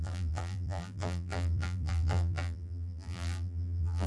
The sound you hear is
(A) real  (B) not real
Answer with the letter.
B